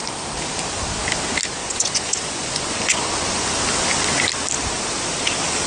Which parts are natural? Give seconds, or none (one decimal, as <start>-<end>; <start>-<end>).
0.0-1.6; 3.5-5.7